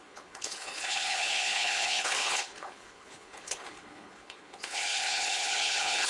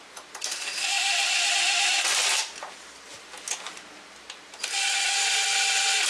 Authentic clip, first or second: second